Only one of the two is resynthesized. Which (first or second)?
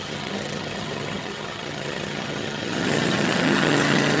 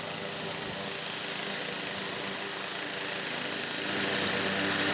first